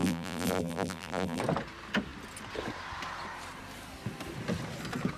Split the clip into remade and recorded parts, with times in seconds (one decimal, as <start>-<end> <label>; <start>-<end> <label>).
0.0-1.4 remade; 1.4-5.2 recorded